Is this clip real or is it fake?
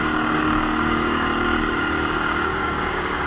fake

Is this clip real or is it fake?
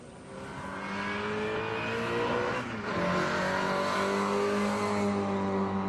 real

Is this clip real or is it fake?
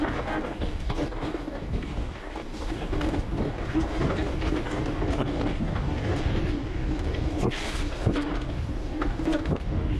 fake